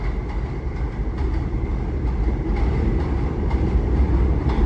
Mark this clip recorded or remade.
recorded